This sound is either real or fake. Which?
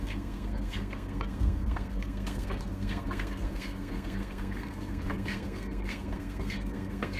fake